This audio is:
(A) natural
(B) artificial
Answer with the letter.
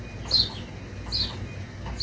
A